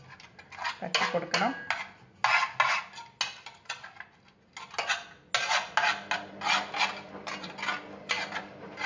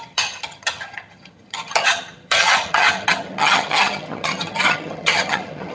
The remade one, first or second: second